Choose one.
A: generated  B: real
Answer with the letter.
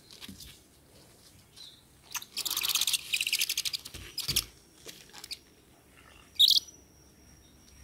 B